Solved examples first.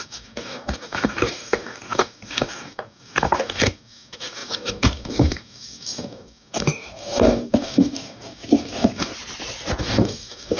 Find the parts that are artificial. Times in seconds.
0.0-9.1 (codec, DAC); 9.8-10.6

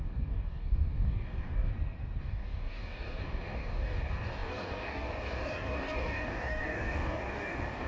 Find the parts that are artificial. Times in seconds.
0.0-1.7 (codec, DAC); 2.2-7.9

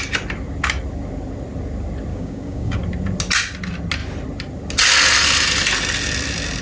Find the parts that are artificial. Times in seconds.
2.1-2.8 (codec, DAC)

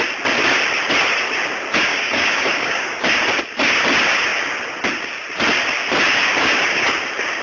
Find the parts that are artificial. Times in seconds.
1.9-3.0 (codec, DAC)

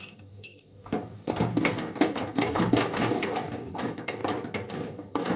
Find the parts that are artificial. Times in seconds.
0.0-4.2 (codec, DAC); 4.7-5.4